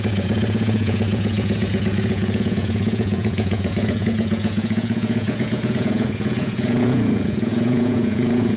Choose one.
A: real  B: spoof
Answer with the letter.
B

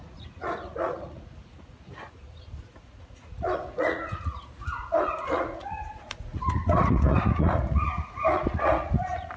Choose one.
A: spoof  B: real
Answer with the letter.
A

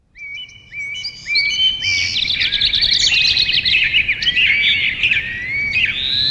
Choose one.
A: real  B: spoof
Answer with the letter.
A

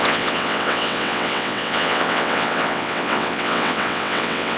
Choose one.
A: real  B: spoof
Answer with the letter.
B